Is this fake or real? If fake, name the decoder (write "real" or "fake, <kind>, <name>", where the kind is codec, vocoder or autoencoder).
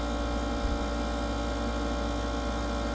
real